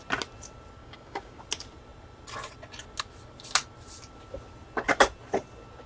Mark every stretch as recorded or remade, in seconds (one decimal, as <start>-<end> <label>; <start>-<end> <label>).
0.0-0.8 recorded; 0.8-1.4 remade; 1.4-5.9 recorded